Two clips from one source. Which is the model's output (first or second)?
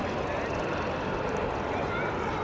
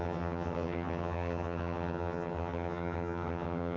second